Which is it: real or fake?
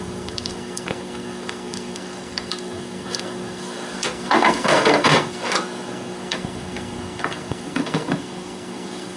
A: fake